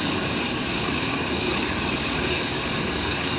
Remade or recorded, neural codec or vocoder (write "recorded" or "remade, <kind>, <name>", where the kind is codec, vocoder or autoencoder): remade, codec, DAC